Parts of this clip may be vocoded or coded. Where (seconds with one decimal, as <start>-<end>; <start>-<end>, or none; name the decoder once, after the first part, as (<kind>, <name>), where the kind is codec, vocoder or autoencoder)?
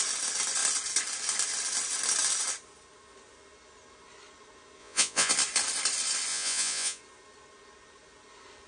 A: 4.8-5.3 (vocoder, Vocos); 6.3-7.0